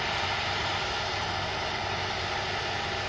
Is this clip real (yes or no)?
yes